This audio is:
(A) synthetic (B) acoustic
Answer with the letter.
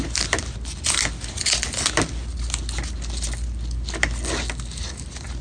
B